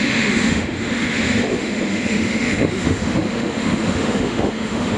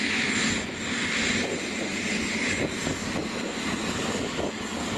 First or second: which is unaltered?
second